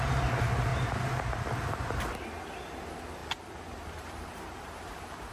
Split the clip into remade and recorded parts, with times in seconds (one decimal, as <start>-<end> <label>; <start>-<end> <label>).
0.0-0.7 recorded; 0.7-2.0 remade; 2.0-3.2 recorded; 3.2-5.3 remade